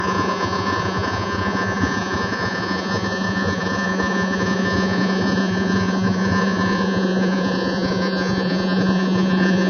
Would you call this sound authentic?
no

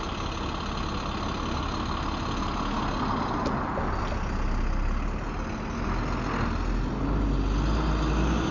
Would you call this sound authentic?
yes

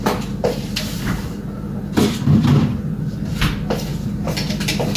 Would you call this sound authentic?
yes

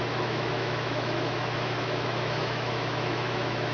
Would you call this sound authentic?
no